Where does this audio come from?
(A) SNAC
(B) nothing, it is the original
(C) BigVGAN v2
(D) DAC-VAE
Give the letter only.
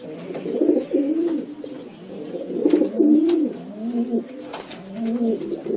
B